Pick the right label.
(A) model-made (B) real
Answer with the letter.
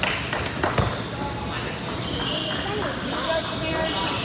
B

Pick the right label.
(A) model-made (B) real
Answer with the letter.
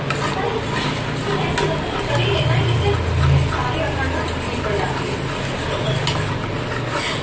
B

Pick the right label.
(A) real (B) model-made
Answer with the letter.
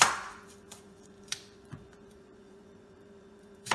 B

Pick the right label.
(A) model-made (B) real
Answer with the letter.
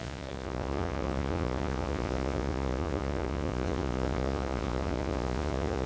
A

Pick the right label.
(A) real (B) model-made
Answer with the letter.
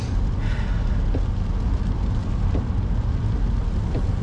A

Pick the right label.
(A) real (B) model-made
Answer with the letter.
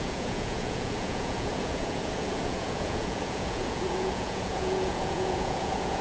B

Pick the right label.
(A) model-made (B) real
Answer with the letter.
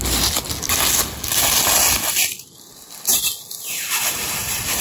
B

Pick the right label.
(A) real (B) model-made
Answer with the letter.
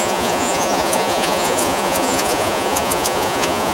B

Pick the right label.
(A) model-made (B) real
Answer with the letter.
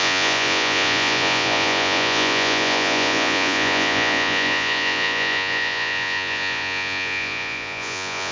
A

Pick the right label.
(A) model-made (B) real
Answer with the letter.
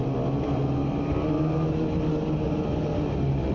B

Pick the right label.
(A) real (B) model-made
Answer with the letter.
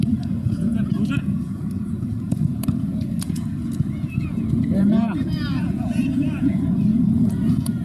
B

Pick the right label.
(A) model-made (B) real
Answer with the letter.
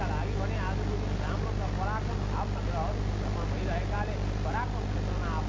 B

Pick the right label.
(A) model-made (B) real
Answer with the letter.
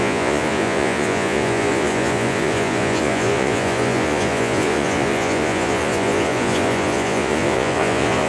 A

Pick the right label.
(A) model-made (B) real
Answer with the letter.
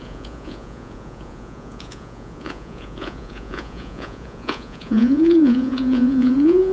A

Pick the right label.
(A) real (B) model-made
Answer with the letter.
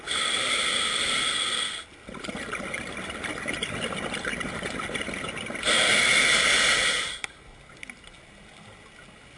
A